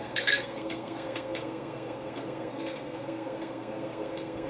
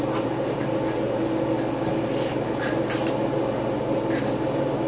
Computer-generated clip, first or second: first